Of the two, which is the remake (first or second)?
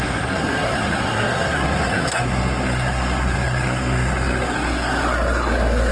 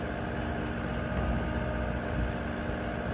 first